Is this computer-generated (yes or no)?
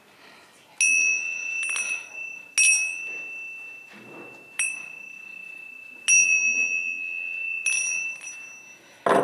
no